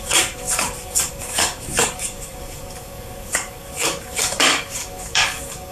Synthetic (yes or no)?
yes